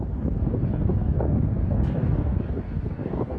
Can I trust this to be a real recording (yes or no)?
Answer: no